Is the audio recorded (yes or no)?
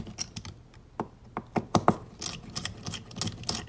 yes